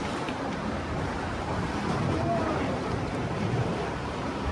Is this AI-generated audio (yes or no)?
yes